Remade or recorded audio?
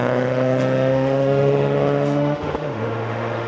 remade